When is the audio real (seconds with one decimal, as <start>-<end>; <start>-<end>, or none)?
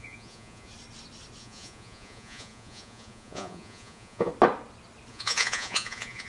0.7-1.4; 4.3-5.1